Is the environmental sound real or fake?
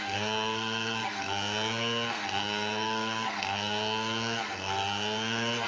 fake